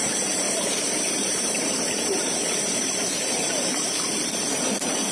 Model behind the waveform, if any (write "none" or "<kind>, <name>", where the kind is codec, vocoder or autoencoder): vocoder, BigVGAN v2